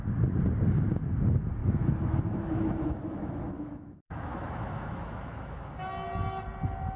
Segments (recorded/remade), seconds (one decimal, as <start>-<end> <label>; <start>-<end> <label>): 0.0-1.6 recorded; 1.6-5.8 remade; 5.8-7.0 recorded